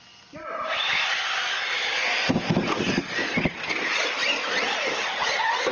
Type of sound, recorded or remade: recorded